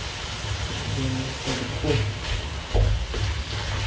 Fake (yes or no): no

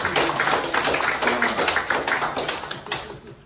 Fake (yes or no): no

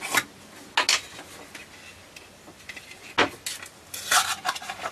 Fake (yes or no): no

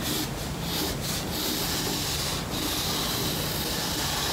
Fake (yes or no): no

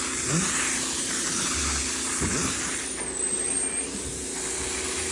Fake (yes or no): no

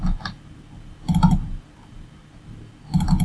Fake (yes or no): no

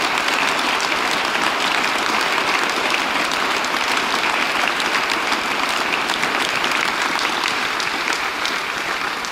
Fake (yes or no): no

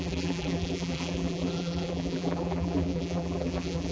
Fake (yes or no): yes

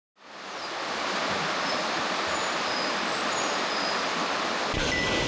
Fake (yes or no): no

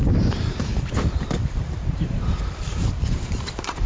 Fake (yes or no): yes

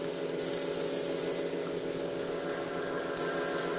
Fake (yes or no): no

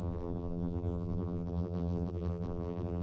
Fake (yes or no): yes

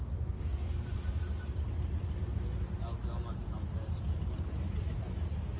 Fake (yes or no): no